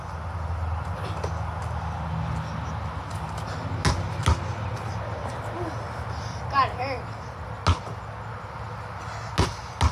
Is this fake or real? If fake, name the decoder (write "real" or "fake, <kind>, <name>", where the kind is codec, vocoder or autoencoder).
real